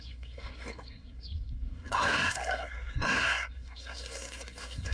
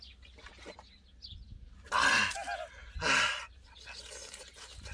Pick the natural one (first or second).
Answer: second